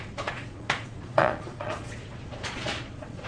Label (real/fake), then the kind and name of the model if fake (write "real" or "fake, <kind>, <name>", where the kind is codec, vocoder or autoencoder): fake, vocoder, Vocos